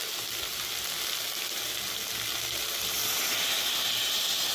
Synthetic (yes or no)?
no